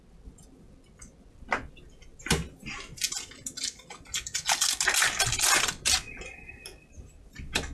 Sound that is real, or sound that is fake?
real